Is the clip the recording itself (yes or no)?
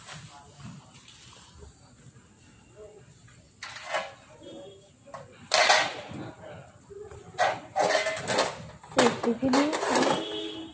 yes